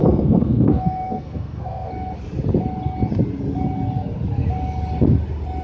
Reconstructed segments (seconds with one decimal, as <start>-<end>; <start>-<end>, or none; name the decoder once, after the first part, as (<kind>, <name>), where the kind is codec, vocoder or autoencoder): 0.0-1.9 (codec, SNAC)